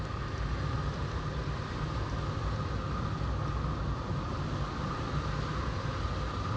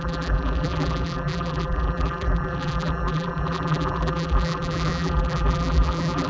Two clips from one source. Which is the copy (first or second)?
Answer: second